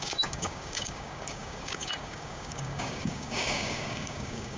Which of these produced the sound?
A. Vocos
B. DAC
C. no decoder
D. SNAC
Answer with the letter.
B